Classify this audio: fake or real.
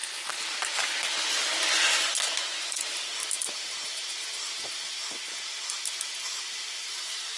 real